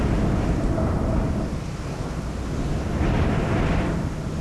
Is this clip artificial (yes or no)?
no